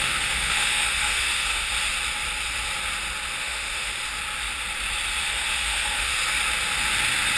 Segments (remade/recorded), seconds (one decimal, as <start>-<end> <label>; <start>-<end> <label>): 0.0-1.7 remade; 1.7-3.4 recorded; 3.4-3.9 remade; 3.9-5.3 recorded; 5.3-6.1 remade; 6.1-7.4 recorded